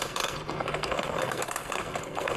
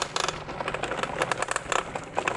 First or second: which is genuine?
second